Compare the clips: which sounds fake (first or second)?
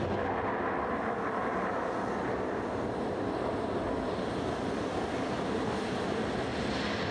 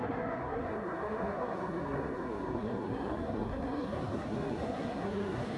second